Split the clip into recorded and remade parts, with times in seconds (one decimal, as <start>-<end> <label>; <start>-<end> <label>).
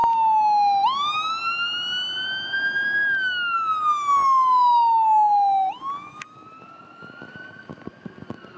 0.0-8.6 recorded